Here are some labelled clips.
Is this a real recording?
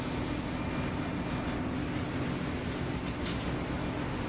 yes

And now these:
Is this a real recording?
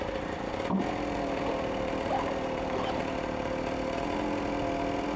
yes